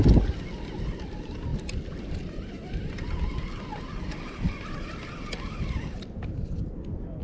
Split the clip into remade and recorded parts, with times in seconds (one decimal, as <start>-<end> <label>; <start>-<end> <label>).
0.0-7.2 recorded